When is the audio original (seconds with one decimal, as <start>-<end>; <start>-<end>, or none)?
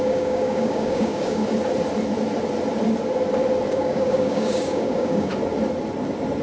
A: 1.4-3.7; 5.3-6.4